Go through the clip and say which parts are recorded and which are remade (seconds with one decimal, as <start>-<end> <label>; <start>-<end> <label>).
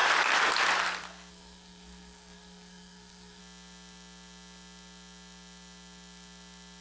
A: 0.0-1.3 recorded; 1.3-3.4 remade; 3.4-6.8 recorded